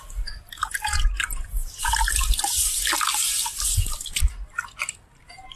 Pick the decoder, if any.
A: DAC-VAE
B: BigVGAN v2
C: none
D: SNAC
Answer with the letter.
C